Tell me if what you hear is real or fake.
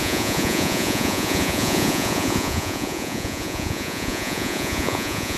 fake